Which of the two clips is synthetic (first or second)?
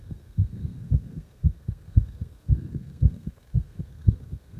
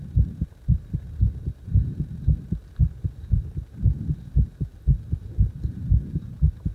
first